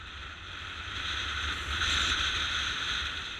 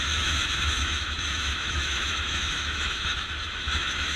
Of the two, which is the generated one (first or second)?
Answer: second